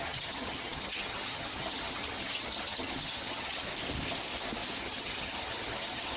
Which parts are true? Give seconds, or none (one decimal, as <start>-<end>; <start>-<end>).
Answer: 3.7-4.8